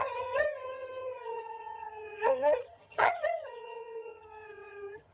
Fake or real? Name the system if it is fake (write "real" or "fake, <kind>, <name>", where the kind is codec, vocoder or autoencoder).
fake, vocoder, HiFi-GAN